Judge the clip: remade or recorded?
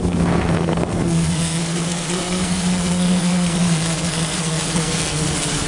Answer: remade